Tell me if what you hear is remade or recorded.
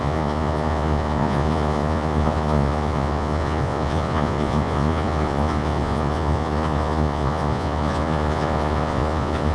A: remade